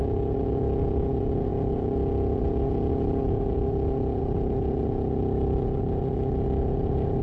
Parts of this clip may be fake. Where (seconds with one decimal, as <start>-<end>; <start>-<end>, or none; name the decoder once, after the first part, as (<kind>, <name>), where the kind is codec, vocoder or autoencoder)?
none